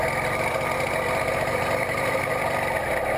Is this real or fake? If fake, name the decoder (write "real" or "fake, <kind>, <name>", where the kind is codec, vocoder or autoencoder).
fake, vocoder, BigVGAN v2